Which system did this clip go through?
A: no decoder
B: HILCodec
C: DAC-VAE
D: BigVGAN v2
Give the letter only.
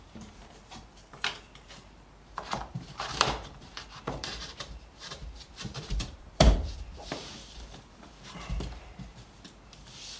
D